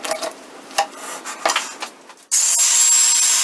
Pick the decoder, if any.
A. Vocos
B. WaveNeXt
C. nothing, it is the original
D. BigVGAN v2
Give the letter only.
C